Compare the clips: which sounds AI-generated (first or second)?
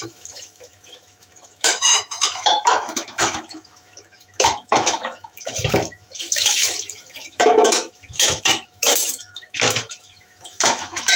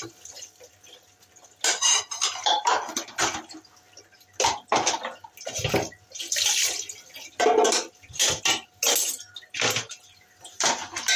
first